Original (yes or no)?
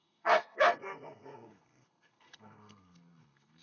no